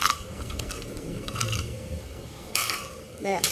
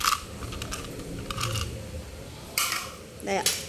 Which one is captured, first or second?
second